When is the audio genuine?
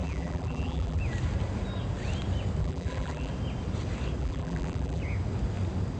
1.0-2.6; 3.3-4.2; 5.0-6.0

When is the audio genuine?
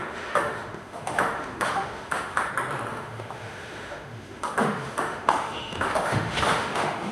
2.5-2.9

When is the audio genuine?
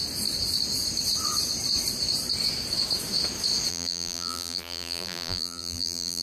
0.0-3.7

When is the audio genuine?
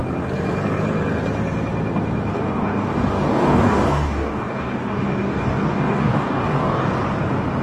0.0-2.3; 6.9-7.6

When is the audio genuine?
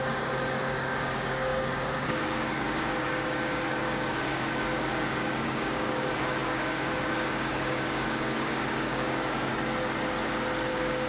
9.5-10.7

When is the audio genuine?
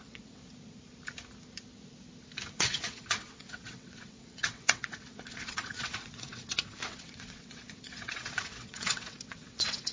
0.4-2.5